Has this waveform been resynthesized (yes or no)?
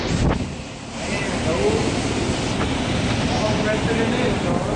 no